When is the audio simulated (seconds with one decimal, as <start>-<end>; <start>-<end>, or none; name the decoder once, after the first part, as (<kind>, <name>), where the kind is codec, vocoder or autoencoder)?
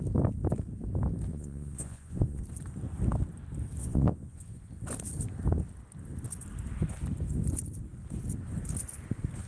1.3-2.4 (vocoder, Vocos); 3.8-4.7